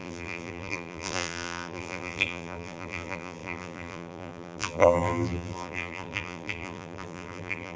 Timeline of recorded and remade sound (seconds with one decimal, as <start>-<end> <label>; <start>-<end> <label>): 0.0-7.8 remade